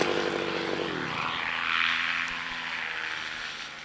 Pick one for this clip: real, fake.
real